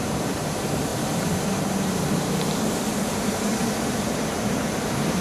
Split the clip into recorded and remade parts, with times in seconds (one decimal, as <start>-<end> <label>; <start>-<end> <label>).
0.0-5.2 remade